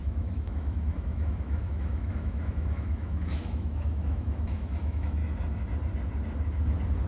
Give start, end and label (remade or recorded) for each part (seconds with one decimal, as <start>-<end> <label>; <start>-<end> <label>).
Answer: 0.0-5.2 remade; 5.2-7.1 recorded